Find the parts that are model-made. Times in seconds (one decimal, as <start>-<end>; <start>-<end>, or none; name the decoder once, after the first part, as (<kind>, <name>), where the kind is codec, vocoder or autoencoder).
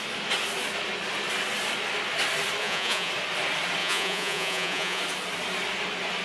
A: 2.6-3.1 (vocoder, Vocos); 3.8-5.0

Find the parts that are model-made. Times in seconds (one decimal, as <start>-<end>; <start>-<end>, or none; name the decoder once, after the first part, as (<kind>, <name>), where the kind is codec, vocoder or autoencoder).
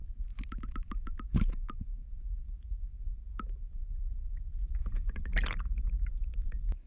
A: 0.6-1.9 (vocoder, BigVGAN v2); 2.5-6.9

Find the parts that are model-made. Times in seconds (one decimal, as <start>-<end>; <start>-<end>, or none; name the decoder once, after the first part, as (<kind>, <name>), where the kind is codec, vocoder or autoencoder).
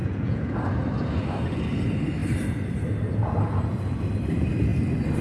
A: 0.0-0.5 (vocoder, Vocos)